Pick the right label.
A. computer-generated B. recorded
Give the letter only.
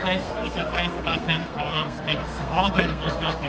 A